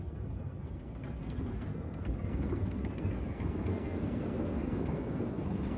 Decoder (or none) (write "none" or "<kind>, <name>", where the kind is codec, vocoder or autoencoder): codec, SNAC